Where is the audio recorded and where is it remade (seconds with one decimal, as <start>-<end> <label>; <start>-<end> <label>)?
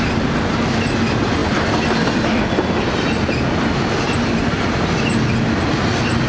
0.0-6.3 recorded